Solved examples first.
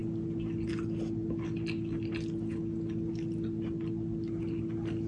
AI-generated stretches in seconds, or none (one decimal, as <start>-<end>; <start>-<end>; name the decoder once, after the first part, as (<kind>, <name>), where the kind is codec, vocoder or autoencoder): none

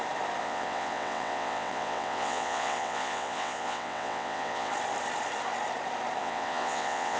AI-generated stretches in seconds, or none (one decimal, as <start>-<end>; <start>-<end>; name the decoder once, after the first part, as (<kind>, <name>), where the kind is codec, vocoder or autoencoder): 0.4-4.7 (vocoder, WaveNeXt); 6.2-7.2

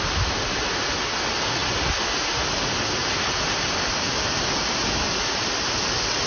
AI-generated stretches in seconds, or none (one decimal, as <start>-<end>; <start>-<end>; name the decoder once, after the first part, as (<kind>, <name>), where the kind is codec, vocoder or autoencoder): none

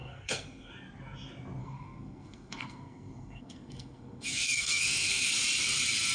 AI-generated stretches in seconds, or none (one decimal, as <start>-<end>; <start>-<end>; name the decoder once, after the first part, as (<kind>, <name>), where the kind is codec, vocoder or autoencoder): 0.0-0.7 (codec, SNAC); 1.6-5.3

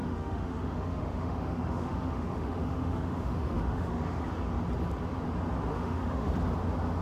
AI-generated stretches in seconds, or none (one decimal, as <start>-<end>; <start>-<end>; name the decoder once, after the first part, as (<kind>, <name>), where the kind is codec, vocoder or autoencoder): 0.0-4.2 (autoencoder, DAC-VAE); 5.7-6.3

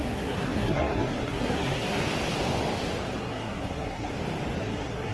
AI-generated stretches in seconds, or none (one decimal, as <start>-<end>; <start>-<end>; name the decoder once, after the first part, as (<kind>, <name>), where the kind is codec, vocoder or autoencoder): 0.0-2.0 (codec, SNAC); 3.2-4.1; 4.6-5.1